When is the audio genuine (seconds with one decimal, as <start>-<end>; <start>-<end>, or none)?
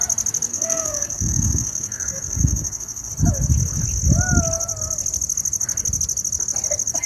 0.0-0.5; 3.1-7.1